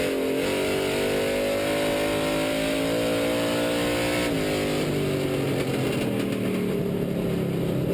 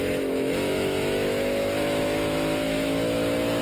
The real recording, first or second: first